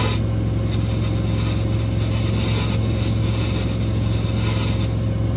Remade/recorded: recorded